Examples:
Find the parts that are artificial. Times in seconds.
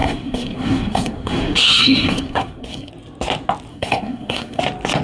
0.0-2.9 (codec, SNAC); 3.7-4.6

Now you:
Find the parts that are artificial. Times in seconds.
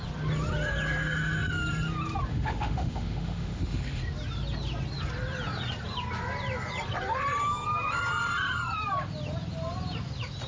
2.3-4.0 (autoencoder, DAC-VAE)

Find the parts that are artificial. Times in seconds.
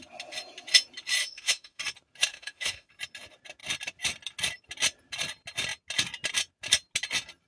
1.2-1.8 (autoencoder, DAC-VAE); 2.3-2.9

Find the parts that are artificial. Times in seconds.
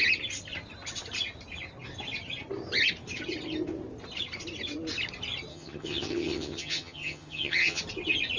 5.5-7.8 (vocoder, HiFi-GAN)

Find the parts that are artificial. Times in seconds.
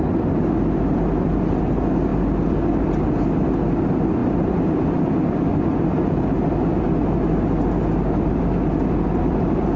none